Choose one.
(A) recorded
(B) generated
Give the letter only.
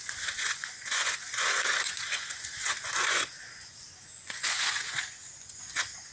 B